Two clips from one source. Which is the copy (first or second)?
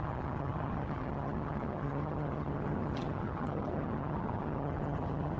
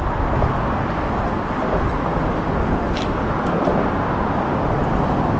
first